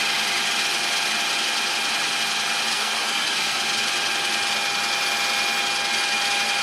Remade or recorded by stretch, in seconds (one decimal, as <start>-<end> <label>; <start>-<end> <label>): 0.0-2.7 recorded; 2.7-3.6 remade; 3.6-6.6 recorded